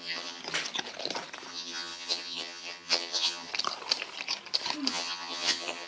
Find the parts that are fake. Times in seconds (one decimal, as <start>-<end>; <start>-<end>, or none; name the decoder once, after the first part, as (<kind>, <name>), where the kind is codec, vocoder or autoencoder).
0.0-0.4 (vocoder, HiFi-GAN); 1.5-3.5; 4.9-5.9